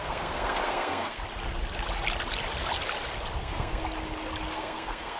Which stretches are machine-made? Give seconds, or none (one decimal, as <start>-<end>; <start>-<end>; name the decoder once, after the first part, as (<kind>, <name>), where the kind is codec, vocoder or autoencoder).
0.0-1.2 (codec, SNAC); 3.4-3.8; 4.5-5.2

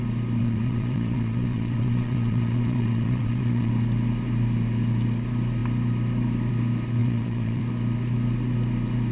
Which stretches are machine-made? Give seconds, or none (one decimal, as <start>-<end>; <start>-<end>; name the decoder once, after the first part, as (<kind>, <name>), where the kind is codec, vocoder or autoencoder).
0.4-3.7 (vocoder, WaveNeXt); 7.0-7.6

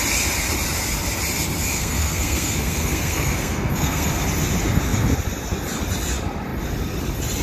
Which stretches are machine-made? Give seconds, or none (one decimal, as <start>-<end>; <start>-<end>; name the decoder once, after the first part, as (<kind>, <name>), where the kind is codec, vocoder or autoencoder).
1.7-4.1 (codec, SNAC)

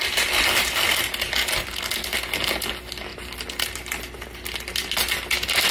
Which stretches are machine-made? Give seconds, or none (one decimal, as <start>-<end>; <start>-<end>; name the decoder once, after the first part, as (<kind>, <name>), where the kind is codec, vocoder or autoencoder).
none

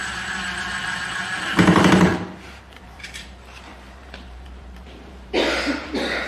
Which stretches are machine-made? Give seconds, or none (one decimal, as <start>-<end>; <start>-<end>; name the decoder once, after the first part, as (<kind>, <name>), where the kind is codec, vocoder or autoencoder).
0.0-2.1 (vocoder, BigVGAN v2); 2.8-6.3

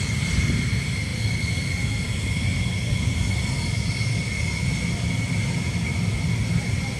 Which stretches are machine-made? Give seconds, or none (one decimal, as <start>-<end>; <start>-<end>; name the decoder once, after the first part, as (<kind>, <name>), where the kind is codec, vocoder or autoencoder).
none

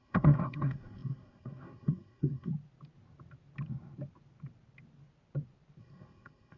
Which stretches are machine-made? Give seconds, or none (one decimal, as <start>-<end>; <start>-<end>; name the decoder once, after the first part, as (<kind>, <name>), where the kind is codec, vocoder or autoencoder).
0.0-2.5 (codec, SNAC); 5.8-6.6

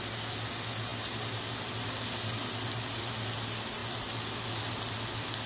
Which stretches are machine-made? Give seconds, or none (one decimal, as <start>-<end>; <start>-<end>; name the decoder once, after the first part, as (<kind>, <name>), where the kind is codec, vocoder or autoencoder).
none